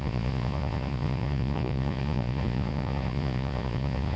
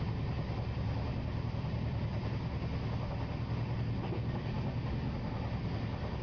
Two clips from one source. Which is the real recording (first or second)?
second